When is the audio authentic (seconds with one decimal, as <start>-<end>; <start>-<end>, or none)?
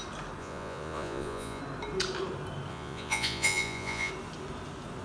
0.0-0.4; 1.6-2.7; 4.1-5.0